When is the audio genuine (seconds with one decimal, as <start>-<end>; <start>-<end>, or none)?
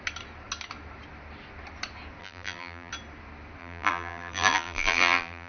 0.0-2.2; 2.9-3.6